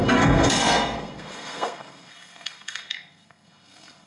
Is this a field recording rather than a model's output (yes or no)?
no